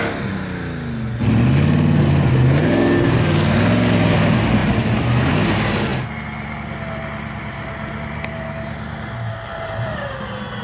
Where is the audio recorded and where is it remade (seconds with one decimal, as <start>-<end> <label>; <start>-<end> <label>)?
0.0-10.6 recorded